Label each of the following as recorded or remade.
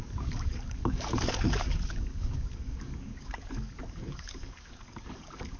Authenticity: remade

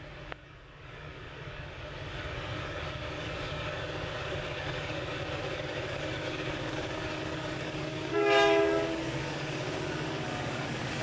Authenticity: remade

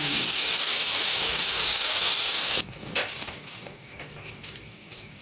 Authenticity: remade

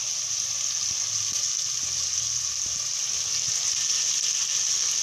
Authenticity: recorded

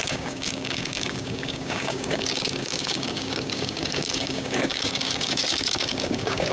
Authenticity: remade